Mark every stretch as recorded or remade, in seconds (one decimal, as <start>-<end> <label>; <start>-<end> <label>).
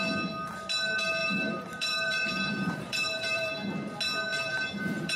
0.0-1.2 recorded; 1.2-3.5 remade; 3.5-4.3 recorded; 4.3-5.2 remade